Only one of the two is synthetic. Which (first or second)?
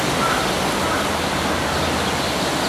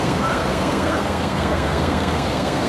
second